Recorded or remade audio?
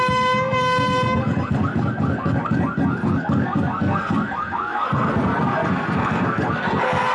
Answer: remade